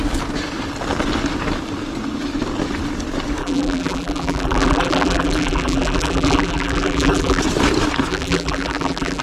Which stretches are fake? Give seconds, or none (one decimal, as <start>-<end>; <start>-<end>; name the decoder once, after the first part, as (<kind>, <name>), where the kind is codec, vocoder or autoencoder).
3.4-7.4 (vocoder, BigVGAN v2); 8.1-9.2